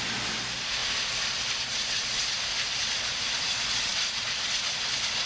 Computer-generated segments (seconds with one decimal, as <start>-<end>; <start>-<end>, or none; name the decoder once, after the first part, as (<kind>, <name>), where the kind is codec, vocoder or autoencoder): none